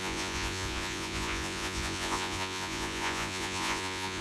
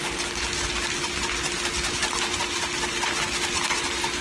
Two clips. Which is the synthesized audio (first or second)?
first